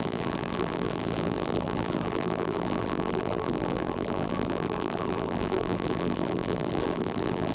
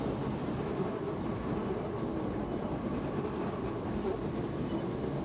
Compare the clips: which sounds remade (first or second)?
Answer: first